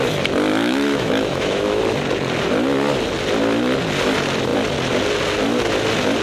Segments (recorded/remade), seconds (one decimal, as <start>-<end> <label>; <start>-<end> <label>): 0.0-0.5 recorded; 0.5-1.8 remade; 1.8-6.2 recorded